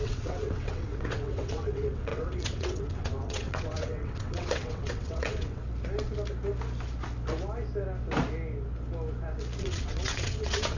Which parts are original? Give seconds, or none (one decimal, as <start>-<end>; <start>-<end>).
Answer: 5.6-9.6